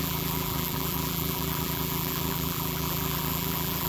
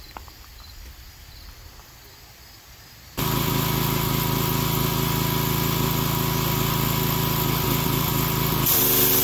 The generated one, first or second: first